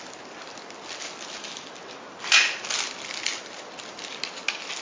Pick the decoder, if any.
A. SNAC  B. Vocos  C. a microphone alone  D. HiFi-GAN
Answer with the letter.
C